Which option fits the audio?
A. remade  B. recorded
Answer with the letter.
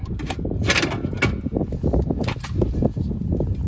B